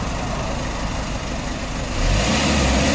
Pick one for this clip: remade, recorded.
recorded